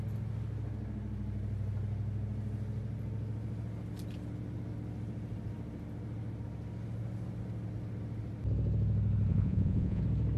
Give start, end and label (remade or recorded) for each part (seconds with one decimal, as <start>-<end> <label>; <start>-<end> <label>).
0.0-9.3 recorded; 9.3-10.0 remade; 10.0-10.4 recorded

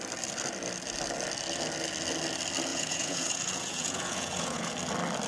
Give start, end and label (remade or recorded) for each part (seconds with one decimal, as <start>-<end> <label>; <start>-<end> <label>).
0.0-2.7 recorded; 2.7-4.7 remade; 4.7-5.3 recorded

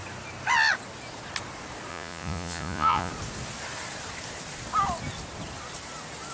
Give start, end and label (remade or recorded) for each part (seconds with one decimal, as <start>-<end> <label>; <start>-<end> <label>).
0.0-1.9 recorded; 1.9-3.1 remade; 3.1-6.3 recorded

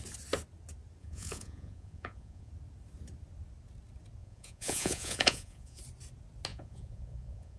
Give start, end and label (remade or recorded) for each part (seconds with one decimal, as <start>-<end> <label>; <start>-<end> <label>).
0.0-1.0 recorded; 1.0-2.5 remade; 2.5-4.2 recorded; 4.2-5.8 remade; 5.8-6.5 recorded; 6.5-7.6 remade

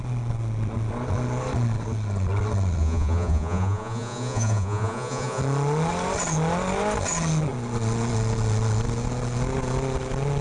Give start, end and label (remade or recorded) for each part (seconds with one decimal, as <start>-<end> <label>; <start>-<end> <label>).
0.0-2.8 recorded; 2.8-5.4 remade; 5.4-10.4 recorded

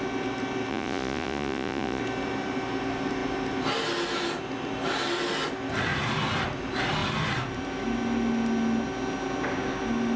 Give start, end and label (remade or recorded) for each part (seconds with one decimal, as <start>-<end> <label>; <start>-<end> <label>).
0.0-0.7 recorded; 0.7-2.0 remade; 2.0-10.2 recorded